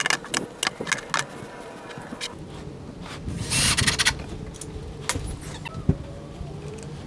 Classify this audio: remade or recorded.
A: recorded